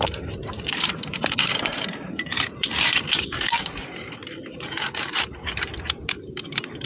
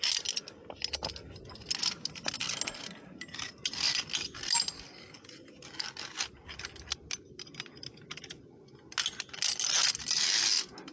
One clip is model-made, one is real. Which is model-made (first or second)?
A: first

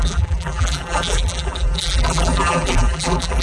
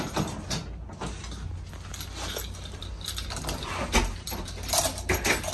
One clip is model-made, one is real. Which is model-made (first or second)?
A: first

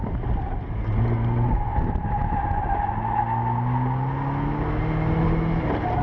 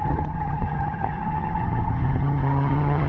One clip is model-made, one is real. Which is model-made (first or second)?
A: second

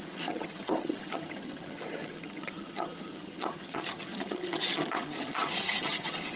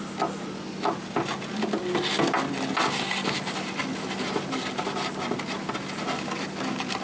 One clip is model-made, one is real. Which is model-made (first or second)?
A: first